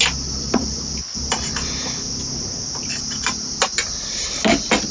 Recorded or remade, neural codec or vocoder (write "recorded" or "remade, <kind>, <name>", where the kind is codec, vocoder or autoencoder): recorded